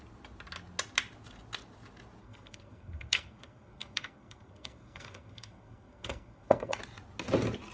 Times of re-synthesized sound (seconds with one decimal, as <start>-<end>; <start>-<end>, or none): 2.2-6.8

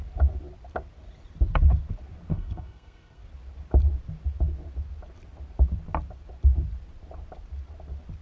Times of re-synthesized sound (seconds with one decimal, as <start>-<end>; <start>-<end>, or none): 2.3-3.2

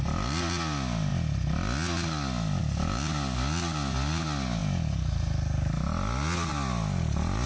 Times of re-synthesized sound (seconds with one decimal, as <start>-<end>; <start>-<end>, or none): none

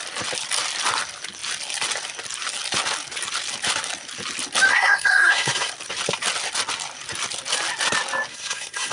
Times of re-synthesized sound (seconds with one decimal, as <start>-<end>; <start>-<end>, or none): 4.7-5.7; 8.3-8.9

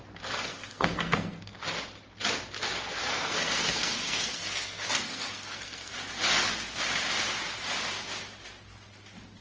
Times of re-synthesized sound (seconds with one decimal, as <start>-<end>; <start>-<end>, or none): 0.5-1.6; 3.0-5.9

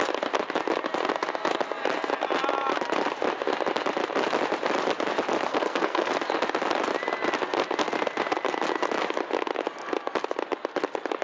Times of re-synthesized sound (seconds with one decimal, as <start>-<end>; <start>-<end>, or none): 5.5-6.1

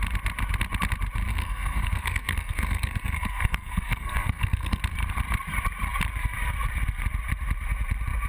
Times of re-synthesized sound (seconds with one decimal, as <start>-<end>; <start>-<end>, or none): 1.3-4.8

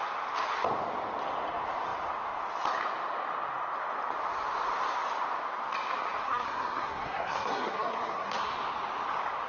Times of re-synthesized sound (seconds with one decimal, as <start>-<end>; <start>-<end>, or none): 6.2-8.5